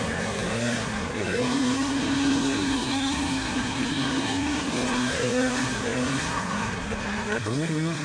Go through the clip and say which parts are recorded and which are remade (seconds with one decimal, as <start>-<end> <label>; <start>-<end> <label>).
0.0-8.0 remade